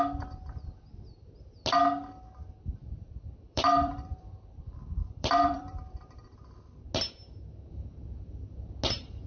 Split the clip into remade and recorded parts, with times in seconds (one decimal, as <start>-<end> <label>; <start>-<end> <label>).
0.0-2.8 recorded; 2.8-6.2 remade; 6.2-9.3 recorded